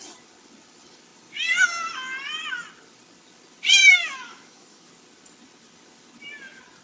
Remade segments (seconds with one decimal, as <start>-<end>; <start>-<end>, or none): 3.8-4.9